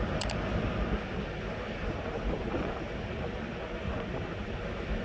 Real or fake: fake